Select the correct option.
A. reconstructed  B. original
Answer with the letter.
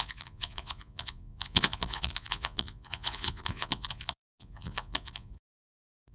A